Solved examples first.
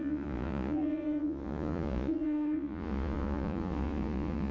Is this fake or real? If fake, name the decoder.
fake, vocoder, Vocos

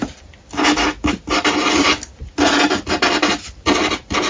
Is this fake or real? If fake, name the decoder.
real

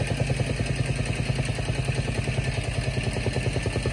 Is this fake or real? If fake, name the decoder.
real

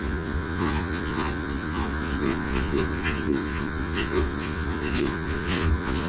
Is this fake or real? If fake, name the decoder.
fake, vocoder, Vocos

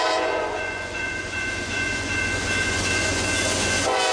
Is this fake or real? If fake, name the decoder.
fake, vocoder, Vocos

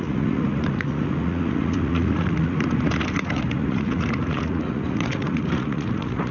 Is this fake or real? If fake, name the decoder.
fake, vocoder, Vocos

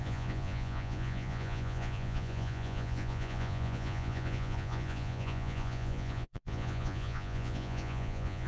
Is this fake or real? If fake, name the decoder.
fake, vocoder, Vocos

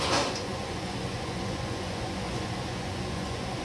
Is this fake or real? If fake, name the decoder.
fake, vocoder, Vocos